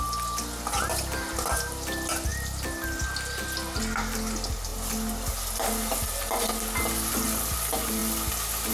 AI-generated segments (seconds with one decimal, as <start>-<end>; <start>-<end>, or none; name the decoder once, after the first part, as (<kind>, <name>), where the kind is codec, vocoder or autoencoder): none